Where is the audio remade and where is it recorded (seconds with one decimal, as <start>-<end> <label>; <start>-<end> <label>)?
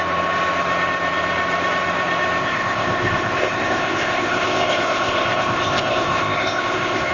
0.0-2.4 recorded; 2.4-7.1 remade